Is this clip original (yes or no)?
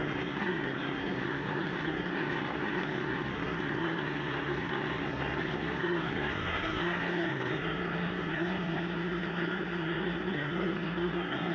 no